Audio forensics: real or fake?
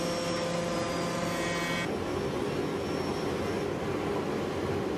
real